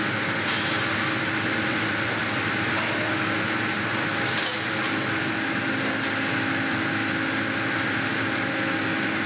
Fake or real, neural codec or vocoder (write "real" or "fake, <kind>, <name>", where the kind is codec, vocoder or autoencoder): real